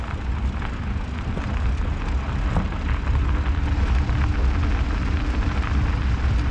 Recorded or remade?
recorded